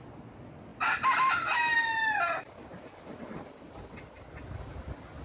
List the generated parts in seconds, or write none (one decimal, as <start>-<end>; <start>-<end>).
0.7-1.3